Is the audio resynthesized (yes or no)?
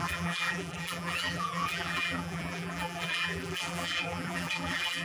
yes